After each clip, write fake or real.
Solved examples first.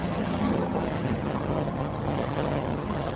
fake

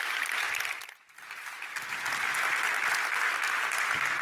real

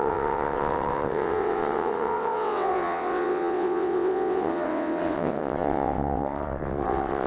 fake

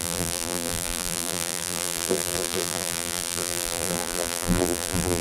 fake